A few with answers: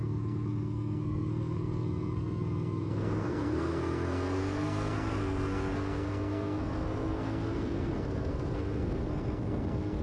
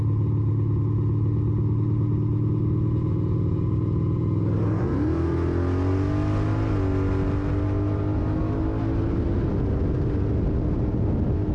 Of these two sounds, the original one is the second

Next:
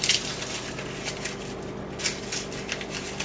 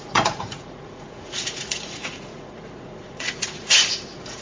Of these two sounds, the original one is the first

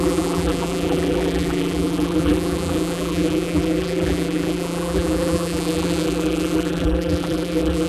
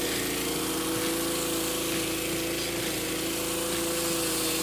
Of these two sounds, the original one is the second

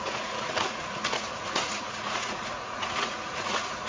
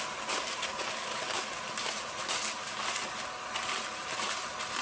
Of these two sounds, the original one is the second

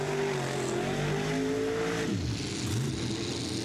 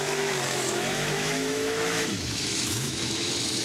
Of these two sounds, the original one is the first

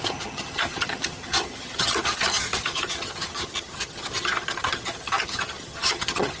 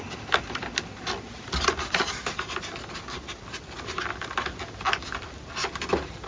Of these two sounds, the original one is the second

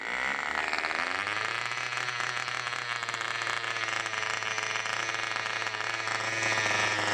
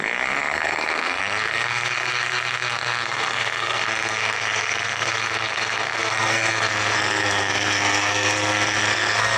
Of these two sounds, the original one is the first